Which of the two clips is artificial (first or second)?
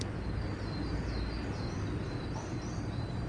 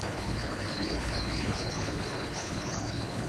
second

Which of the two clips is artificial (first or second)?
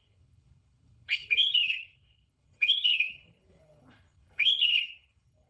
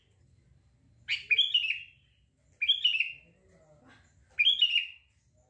first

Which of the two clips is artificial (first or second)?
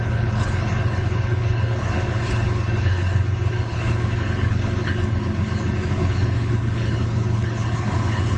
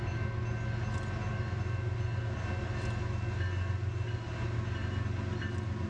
first